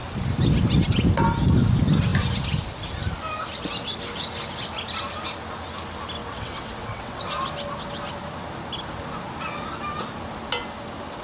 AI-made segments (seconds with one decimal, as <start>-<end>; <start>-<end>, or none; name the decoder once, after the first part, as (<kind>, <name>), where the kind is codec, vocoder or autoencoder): 6.2-7.3 (vocoder, WaveNeXt)